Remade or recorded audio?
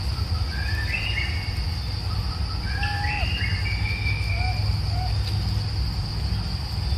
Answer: recorded